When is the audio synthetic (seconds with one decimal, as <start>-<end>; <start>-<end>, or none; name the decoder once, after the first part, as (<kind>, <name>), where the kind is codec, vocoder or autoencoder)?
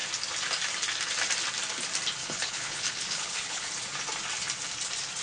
2.2-3.7 (codec, HILCodec)